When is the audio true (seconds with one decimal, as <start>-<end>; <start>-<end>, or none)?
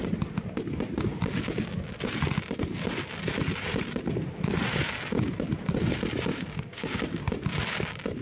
0.0-6.3; 6.9-8.2